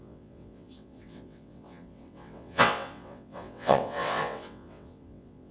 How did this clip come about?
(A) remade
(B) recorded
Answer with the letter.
A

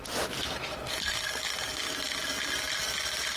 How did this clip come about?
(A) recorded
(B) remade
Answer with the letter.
A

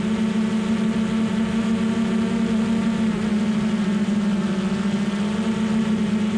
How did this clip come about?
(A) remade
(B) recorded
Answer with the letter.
B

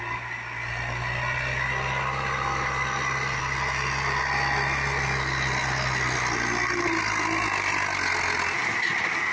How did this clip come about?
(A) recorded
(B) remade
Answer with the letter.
A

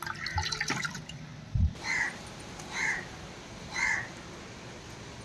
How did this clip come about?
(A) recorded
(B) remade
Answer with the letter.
A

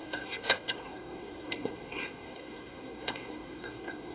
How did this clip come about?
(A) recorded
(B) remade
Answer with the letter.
B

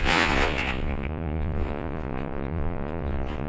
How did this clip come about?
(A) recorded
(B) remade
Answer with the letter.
B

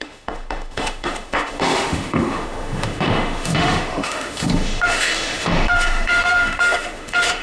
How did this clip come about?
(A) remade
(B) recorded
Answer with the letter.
A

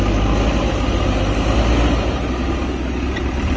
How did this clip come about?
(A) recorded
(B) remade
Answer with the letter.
A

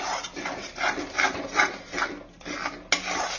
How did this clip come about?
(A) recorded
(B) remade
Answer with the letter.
A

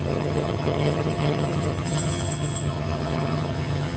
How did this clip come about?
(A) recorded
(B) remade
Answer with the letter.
B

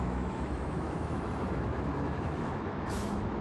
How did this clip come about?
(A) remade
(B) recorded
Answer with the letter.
A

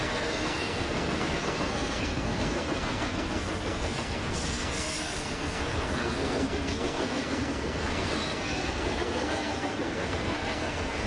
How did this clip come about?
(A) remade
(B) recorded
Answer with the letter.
A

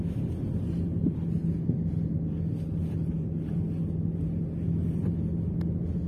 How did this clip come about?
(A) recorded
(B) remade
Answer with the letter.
A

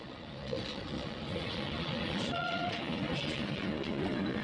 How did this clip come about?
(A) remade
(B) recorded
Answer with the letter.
A